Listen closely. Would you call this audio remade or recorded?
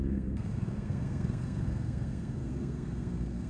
remade